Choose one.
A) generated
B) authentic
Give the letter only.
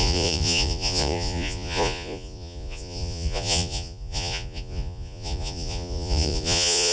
A